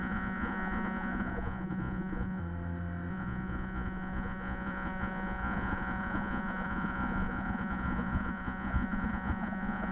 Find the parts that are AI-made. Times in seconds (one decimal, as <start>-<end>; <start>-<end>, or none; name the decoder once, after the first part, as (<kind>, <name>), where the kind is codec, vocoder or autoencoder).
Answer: 0.0-2.4 (vocoder, Vocos); 3.1-9.9